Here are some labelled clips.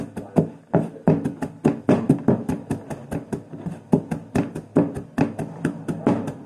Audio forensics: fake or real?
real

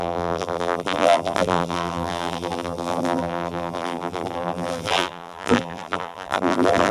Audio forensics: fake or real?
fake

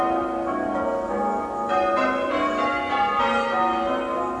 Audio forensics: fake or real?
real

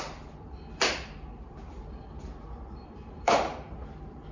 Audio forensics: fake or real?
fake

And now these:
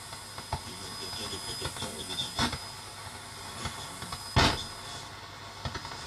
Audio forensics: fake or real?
real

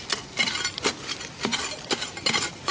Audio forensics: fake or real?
fake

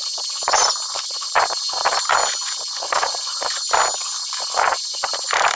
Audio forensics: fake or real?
fake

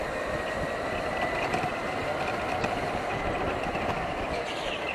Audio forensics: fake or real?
fake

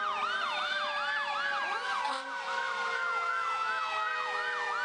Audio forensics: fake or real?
fake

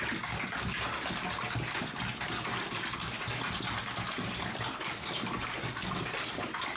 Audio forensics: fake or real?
real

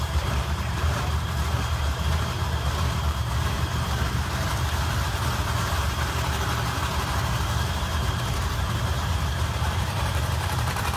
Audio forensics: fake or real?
fake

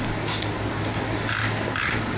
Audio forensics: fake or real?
real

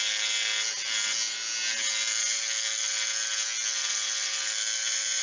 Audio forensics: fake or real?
real